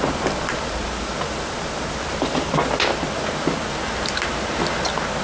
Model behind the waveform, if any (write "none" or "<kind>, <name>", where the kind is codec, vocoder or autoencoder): none